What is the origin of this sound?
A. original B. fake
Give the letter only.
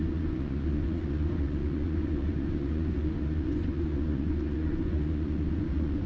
B